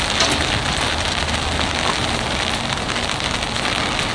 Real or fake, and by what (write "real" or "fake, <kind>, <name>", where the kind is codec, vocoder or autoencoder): real